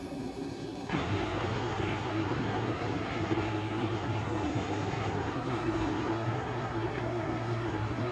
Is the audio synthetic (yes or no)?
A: yes